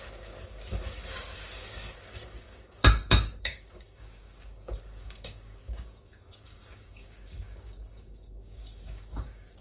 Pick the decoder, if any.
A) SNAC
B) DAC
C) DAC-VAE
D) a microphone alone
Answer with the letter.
B